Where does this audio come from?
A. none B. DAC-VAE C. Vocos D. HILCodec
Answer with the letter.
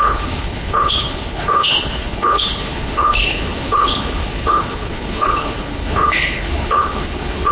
D